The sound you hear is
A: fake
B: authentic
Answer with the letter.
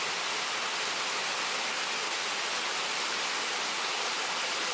B